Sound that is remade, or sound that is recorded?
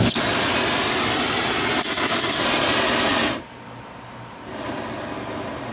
recorded